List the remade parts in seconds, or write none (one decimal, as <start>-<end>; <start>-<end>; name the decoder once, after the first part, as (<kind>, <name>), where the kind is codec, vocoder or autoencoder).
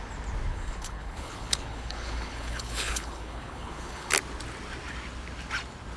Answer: 0.5-4.1 (codec, HILCodec)